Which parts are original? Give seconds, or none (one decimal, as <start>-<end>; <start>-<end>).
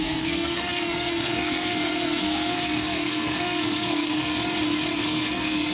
4.3-5.0